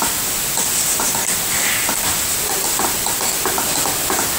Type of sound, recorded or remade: recorded